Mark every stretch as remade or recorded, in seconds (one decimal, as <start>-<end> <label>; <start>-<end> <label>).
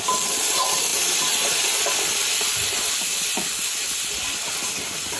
0.0-5.2 recorded